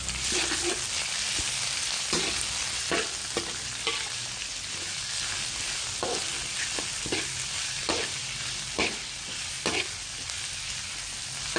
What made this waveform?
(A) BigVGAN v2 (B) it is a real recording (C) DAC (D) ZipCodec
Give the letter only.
B